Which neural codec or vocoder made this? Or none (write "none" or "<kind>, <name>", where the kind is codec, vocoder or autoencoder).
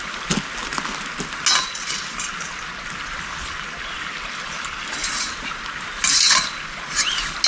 none